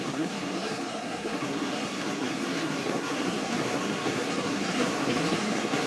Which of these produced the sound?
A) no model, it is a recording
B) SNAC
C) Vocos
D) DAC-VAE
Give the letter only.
B